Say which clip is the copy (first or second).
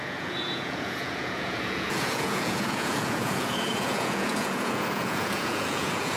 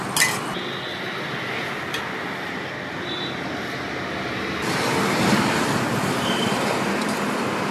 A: first